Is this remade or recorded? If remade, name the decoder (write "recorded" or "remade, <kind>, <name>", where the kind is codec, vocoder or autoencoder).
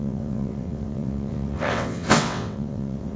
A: remade, vocoder, WaveNeXt